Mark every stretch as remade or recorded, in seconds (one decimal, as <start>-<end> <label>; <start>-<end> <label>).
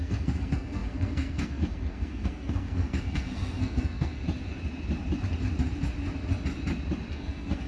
0.0-4.2 remade; 4.2-7.1 recorded; 7.1-7.7 remade